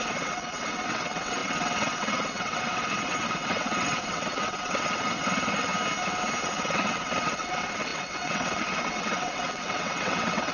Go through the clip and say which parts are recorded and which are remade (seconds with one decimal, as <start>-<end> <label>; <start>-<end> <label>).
0.0-5.7 remade; 5.7-6.4 recorded; 6.4-10.5 remade